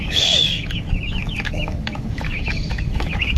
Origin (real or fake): fake